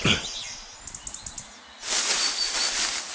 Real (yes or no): yes